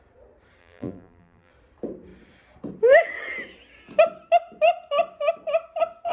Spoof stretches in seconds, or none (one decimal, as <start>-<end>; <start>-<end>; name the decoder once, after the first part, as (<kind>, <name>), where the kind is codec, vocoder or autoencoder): 0.6-1.5 (vocoder, BigVGAN v2)